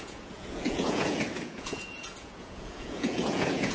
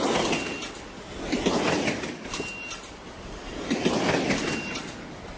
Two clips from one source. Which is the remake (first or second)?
first